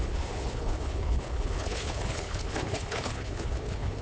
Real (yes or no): no